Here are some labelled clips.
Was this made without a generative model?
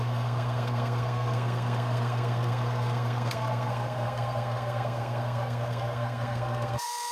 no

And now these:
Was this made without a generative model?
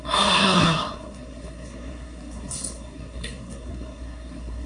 no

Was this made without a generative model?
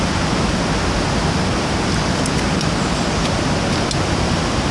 yes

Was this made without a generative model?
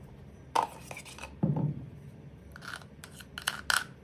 yes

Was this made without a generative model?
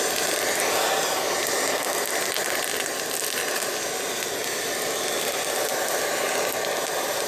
yes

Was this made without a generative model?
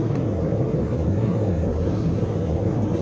no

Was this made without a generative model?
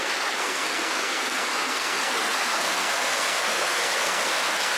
no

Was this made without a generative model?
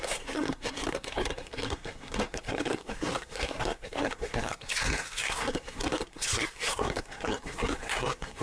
no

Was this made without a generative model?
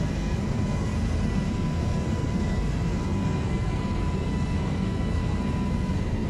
no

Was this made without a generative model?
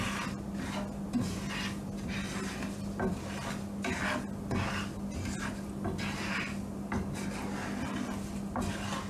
yes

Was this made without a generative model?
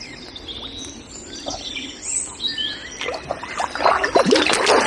yes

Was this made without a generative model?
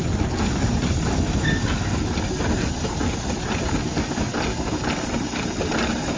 yes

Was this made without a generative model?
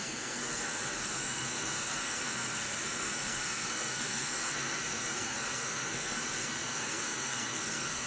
no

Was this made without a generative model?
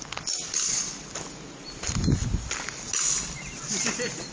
yes